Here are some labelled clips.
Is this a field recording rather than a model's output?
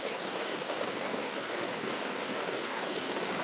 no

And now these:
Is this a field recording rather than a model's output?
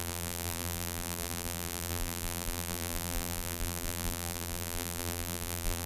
no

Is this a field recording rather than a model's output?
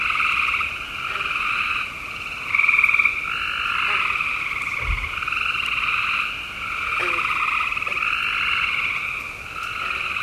yes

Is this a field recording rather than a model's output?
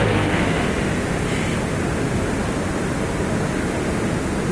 yes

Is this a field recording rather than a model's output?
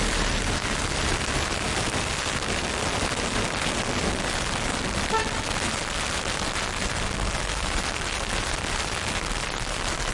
yes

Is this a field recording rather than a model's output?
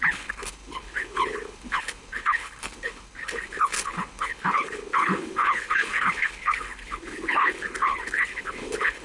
no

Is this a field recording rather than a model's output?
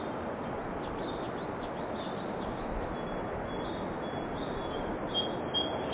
yes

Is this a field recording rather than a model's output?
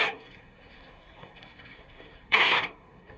no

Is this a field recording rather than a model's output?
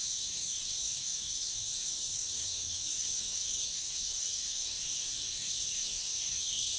no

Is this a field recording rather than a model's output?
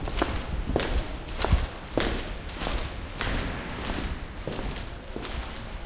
yes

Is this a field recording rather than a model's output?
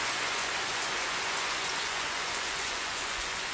no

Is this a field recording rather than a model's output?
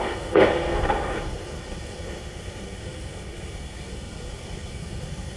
no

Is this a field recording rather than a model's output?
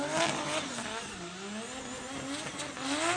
yes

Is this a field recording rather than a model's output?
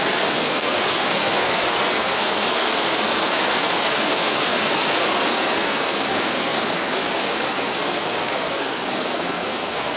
no